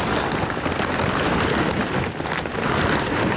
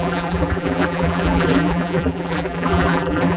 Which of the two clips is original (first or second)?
first